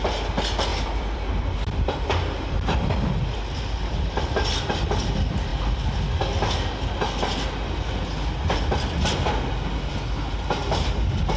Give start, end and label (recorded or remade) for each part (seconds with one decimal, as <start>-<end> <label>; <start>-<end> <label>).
0.0-0.7 recorded; 0.7-4.2 remade; 4.2-11.4 recorded